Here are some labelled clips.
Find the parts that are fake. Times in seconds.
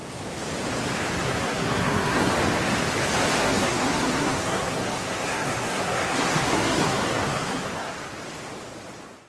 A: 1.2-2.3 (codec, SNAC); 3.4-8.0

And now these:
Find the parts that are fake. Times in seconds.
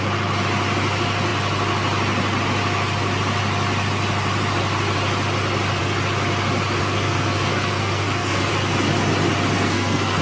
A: 6.8-8.5 (codec, SNAC); 9.5-10.2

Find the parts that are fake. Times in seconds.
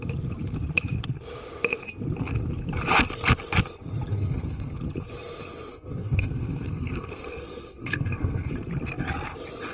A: 4.1-4.7 (codec, SNAC); 5.7-8.5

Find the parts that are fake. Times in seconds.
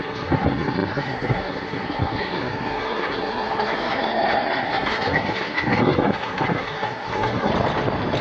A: 0.0-7.5 (codec, SNAC)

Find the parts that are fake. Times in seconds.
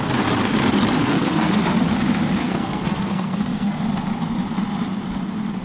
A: 1.0-1.6 (codec, SNAC); 2.4-3.8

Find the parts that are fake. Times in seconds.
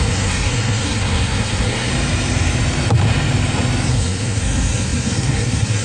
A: 0.0-1.9 (codec, SNAC); 3.9-5.8